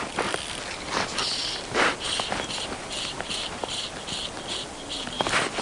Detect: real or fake real